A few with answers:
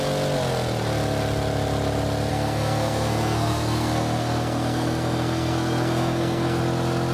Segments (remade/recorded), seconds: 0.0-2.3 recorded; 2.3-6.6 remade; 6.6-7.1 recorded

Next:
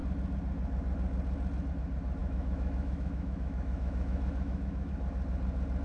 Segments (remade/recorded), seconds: 0.0-2.2 recorded; 2.2-4.9 remade; 4.9-5.8 recorded

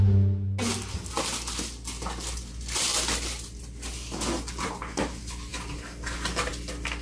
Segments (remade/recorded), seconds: 0.0-7.0 recorded